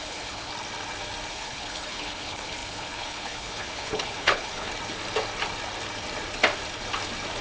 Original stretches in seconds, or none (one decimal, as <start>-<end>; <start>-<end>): 0.5-1.3; 4.7-7.4